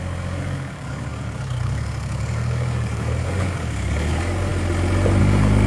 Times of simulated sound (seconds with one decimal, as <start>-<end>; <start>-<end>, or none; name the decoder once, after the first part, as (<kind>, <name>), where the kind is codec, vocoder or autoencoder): 0.0-4.5 (codec, DAC); 5.2-5.7